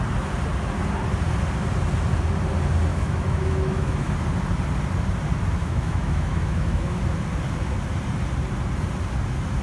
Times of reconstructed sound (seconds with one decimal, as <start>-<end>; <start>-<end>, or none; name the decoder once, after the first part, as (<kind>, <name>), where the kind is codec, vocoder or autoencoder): 2.9-4.1 (autoencoder, DAC-VAE); 5.6-7.0